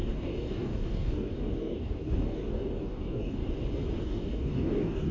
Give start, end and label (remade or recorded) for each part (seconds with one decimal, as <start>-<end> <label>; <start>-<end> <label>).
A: 0.0-3.4 remade; 3.4-4.0 recorded; 4.0-5.1 remade